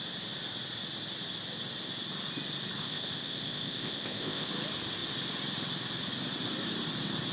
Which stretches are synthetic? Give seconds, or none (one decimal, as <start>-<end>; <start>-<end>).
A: 2.8-4.5